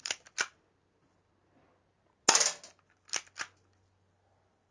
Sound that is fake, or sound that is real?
real